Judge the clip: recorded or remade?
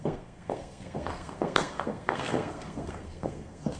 remade